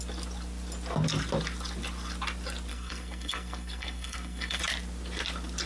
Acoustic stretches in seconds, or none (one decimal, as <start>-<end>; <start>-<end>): 0.0-2.7; 4.6-5.7